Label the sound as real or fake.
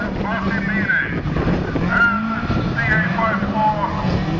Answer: real